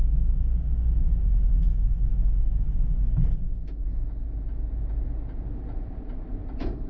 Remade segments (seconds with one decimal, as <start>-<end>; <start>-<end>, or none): 1.7-2.7